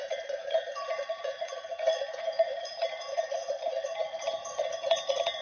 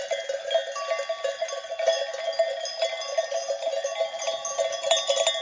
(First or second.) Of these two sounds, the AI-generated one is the first